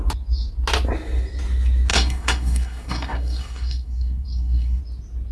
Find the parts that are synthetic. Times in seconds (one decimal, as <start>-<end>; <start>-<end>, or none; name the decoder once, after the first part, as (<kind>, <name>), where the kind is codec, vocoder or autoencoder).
1.9-4.8 (codec, SNAC)